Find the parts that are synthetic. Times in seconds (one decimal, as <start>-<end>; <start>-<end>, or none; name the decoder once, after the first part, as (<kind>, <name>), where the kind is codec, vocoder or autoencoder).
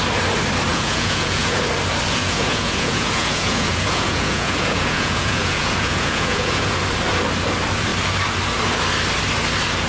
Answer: 0.7-1.6 (vocoder, Vocos); 2.2-6.8